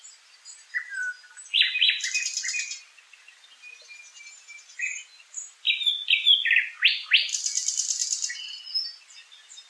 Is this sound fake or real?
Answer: real